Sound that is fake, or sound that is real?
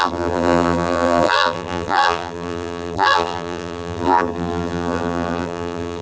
fake